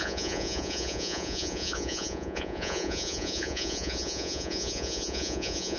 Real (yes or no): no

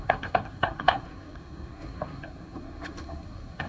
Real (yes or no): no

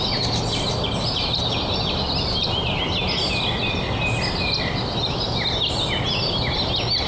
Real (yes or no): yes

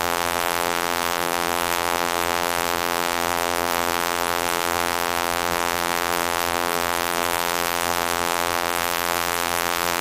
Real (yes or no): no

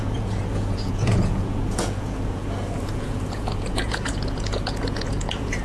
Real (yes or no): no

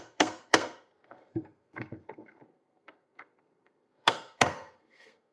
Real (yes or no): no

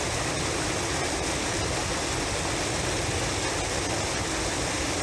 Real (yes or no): yes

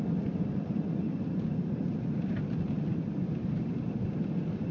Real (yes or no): yes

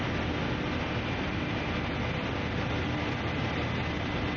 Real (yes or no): yes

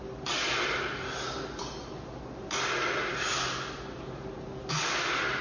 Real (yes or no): yes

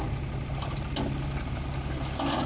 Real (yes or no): yes